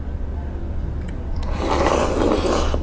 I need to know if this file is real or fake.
real